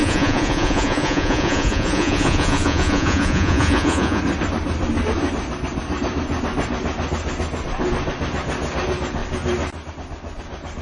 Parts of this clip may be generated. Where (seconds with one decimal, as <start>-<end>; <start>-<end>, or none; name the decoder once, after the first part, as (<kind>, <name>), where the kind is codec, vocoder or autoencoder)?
0.0-4.2 (vocoder, Vocos)